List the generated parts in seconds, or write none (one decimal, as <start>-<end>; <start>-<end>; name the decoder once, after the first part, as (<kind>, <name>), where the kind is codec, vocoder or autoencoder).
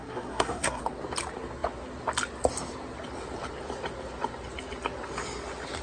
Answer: 0.0-0.8 (codec, SNAC)